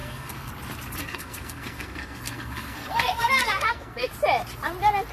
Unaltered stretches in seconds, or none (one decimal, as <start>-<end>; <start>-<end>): 0.5-1.0; 4.1-5.1